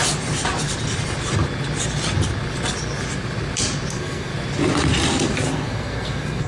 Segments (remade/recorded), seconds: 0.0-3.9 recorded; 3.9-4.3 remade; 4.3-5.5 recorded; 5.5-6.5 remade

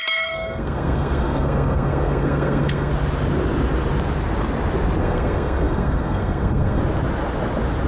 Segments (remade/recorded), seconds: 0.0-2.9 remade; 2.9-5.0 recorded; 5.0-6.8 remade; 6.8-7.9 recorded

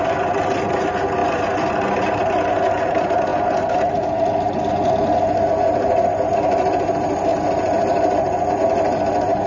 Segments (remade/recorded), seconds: 0.0-9.5 recorded

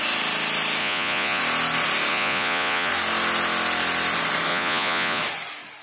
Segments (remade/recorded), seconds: 0.0-0.8 recorded; 0.8-1.4 remade; 1.4-2.1 recorded; 2.1-2.9 remade; 2.9-4.5 recorded; 4.5-5.2 remade; 5.2-5.8 recorded

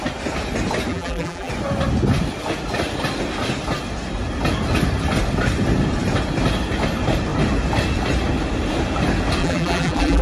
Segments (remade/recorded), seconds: 0.0-0.9 recorded; 0.9-1.5 remade; 1.5-9.4 recorded; 9.4-10.2 remade

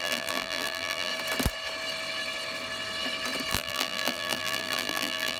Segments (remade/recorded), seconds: 0.0-1.1 remade; 1.1-3.5 recorded; 3.5-5.4 remade